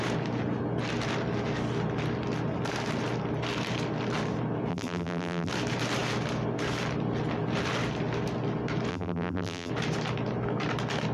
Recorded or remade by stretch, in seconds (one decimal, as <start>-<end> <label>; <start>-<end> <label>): 0.0-4.7 recorded; 4.7-5.5 remade; 5.5-8.9 recorded; 8.9-9.7 remade; 9.7-11.1 recorded